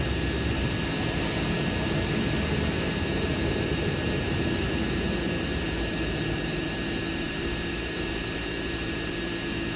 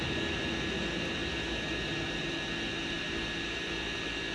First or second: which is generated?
first